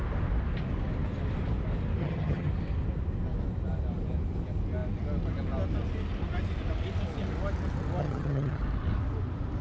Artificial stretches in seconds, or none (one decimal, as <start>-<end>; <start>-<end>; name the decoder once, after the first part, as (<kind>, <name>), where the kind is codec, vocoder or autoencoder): 2.0-2.5 (vocoder, HiFi-GAN); 8.0-8.6